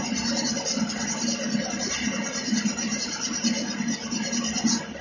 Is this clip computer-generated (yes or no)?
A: no